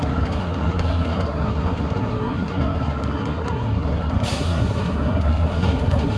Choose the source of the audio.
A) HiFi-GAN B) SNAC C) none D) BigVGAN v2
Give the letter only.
B